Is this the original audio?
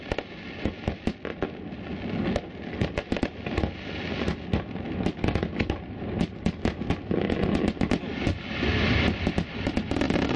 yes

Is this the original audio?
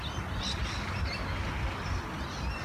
yes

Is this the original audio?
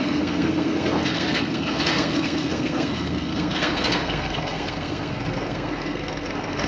no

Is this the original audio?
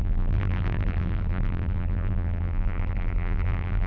no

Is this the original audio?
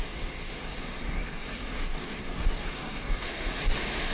no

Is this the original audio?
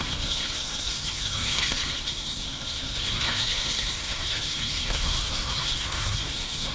no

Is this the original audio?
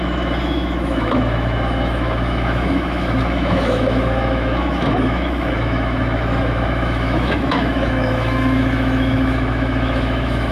no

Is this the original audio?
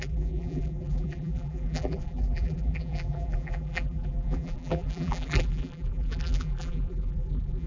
no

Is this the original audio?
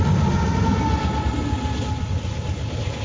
yes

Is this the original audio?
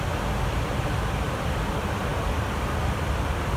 yes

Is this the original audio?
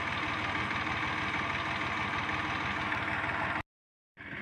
yes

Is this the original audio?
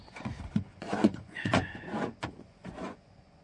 no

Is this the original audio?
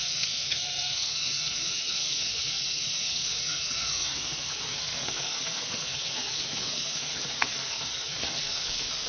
no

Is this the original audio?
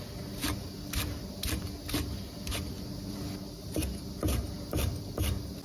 yes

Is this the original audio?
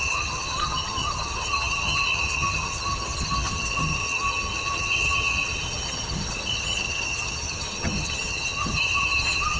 no